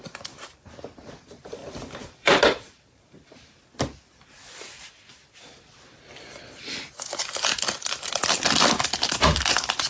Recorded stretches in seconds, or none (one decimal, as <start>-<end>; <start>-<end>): 0.0-1.6; 3.6-9.9